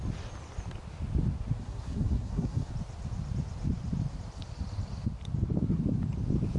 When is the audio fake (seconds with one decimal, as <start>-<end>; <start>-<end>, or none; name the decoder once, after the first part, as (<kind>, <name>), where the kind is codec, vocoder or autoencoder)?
1.6-2.7 (codec, SNAC)